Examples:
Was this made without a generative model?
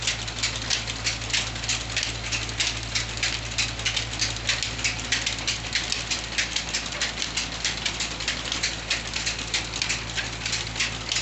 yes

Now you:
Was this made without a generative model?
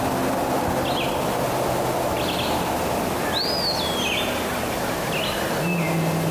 yes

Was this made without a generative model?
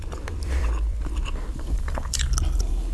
no